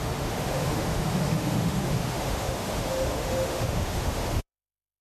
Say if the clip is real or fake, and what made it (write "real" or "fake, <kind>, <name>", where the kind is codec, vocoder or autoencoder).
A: fake, autoencoder, DAC-VAE